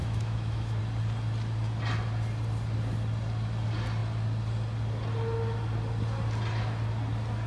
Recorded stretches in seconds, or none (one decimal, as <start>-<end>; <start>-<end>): 0.8-7.5

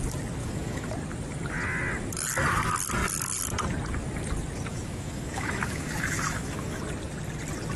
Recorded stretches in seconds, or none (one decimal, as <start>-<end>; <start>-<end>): 0.0-0.4; 0.9-4.7; 6.8-7.8

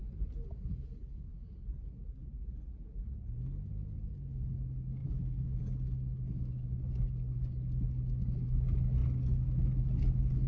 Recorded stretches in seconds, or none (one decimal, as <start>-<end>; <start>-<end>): 0.0-5.0; 5.6-10.5

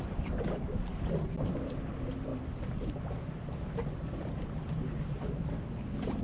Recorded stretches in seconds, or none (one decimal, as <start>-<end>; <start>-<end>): 0.0-6.2

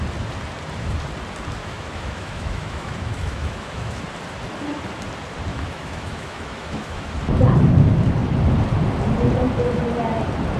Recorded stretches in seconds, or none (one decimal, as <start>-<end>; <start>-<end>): 0.0-1.6; 4.0-5.5; 7.1-10.6

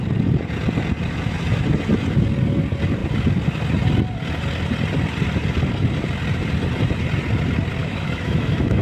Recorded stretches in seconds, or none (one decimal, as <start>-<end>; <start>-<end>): 0.0-7.8

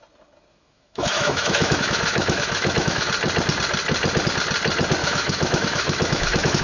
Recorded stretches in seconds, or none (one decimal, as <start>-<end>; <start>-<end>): 0.0-0.5; 3.1-5.0